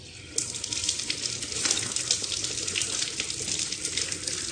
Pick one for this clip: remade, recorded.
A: recorded